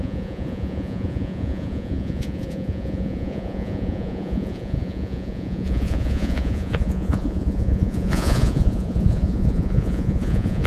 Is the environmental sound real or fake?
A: fake